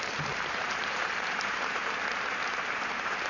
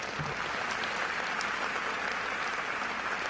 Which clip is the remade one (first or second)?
first